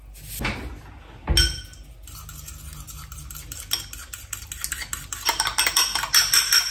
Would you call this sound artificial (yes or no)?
no